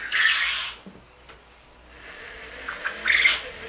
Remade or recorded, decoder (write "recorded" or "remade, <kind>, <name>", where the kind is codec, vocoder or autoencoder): recorded